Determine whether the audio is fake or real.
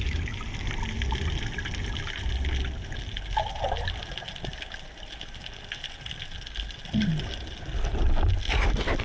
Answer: real